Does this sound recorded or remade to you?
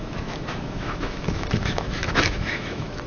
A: remade